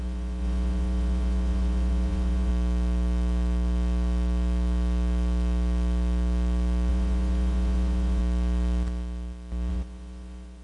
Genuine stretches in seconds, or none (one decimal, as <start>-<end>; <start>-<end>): 2.5-6.9; 8.2-9.7